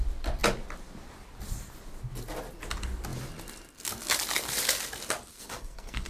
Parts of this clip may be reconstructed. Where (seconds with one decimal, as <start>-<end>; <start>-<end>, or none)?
5.3-6.1